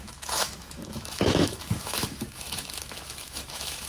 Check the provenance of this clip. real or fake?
fake